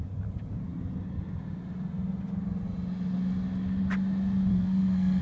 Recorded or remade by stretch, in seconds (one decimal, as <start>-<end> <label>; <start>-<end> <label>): 0.0-4.5 recorded; 4.5-5.2 remade